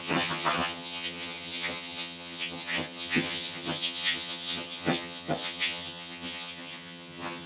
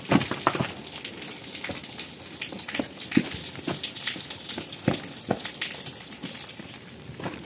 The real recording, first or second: second